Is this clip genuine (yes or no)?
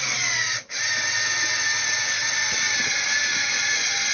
yes